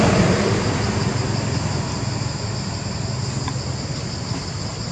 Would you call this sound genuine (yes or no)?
yes